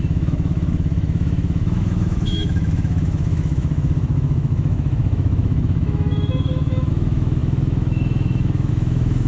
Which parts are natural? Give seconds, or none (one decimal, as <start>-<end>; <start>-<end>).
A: none